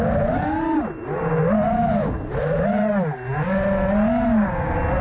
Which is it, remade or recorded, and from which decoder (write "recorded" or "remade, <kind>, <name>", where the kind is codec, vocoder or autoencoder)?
recorded